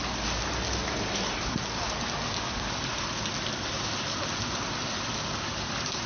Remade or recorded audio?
recorded